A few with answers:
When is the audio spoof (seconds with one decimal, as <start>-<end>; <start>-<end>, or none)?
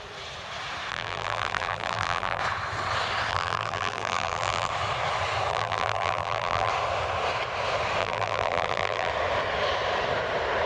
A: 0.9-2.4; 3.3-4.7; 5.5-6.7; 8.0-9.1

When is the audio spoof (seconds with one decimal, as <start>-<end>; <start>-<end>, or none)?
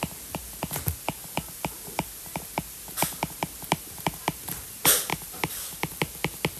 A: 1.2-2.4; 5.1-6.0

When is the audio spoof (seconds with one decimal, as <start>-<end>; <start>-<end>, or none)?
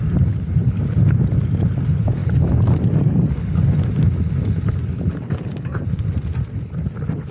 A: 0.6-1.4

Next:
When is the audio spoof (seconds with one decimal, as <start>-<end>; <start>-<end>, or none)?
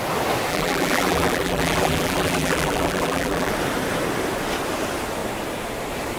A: 0.5-3.5